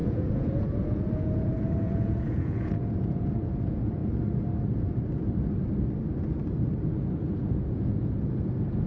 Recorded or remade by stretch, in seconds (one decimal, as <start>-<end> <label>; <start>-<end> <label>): 0.0-4.0 remade; 4.0-6.8 recorded; 6.8-8.9 remade